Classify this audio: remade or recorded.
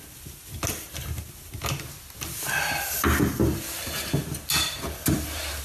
recorded